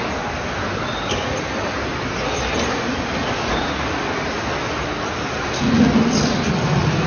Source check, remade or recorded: recorded